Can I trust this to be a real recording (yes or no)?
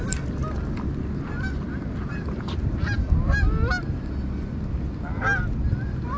yes